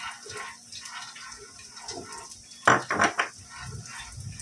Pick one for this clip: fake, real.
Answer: real